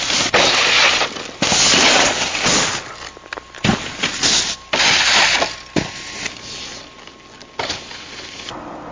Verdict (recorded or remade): recorded